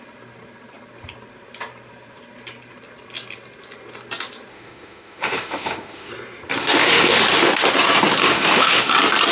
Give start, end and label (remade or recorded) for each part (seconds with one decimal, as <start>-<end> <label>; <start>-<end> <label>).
0.0-4.5 recorded; 4.5-6.1 remade; 6.1-6.6 recorded; 6.6-7.2 remade; 7.2-8.2 recorded; 8.2-8.9 remade; 8.9-9.3 recorded